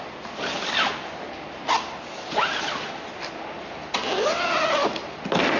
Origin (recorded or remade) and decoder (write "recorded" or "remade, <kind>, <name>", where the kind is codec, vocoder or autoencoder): recorded